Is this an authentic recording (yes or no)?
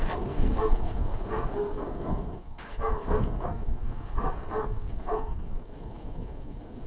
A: no